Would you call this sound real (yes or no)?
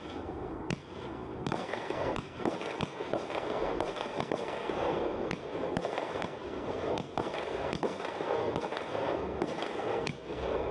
no